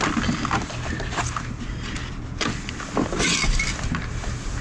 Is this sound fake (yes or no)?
no